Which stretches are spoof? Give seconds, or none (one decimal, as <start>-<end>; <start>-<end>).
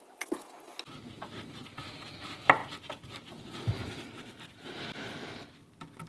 none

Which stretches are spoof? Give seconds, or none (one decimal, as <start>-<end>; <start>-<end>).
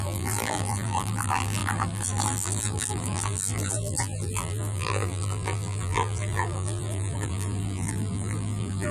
0.0-8.9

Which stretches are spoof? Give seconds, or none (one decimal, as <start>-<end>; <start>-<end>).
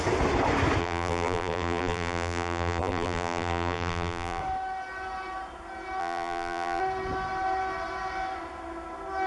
0.8-4.4; 6.0-6.8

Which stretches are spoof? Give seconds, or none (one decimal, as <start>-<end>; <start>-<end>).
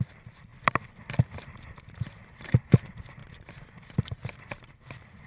0.0-0.5; 1.1-3.2; 4.0-5.3